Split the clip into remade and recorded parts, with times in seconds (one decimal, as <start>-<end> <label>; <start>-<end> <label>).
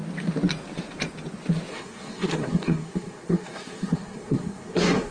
0.0-1.7 recorded; 1.7-5.1 remade